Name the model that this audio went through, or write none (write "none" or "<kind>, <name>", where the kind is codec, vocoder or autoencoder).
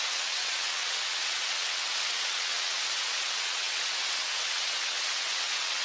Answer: vocoder, WaveNeXt